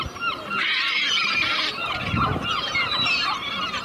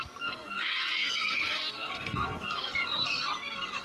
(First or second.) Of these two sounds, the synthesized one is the second